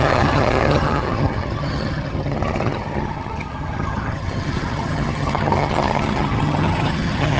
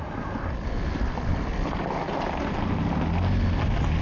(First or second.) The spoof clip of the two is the first